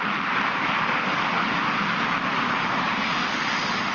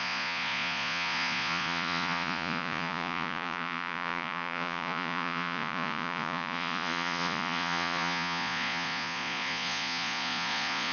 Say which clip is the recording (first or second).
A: first